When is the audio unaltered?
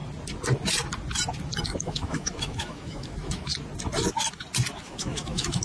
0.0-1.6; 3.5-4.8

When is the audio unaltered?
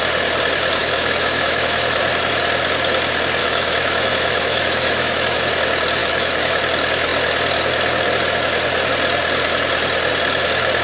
0.0-0.8; 2.0-3.4; 5.4-6.0; 6.6-10.8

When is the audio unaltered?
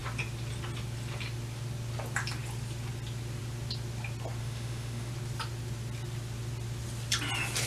0.0-4.4; 5.1-7.7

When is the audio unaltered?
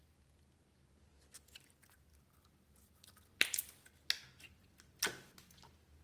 0.0-6.0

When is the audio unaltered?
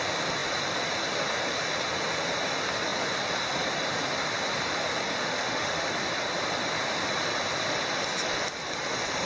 0.0-5.1; 5.9-9.3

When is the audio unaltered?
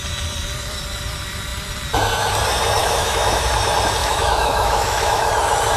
0.0-2.8; 3.5-4.0; 5.3-5.8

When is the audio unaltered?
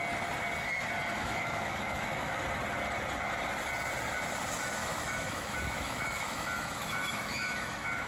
0.0-1.2; 2.4-4.8